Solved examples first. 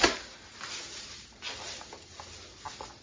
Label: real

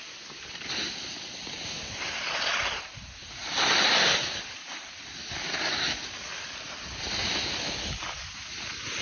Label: real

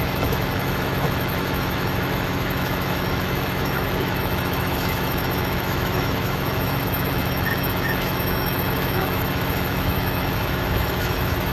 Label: fake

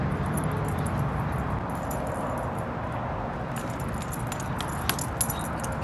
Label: real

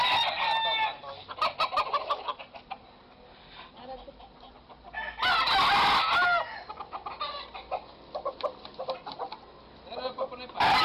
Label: real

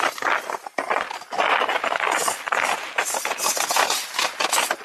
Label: real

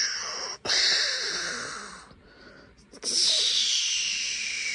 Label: real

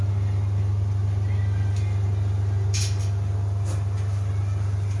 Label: real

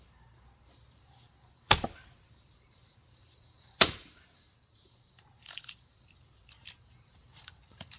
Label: fake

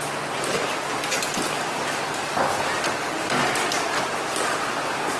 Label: real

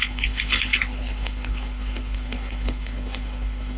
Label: fake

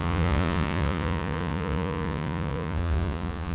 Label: fake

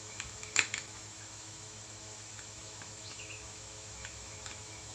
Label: fake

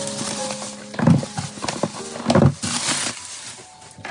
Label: real